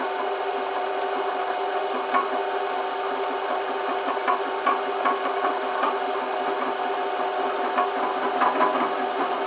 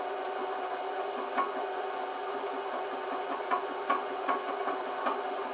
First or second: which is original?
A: first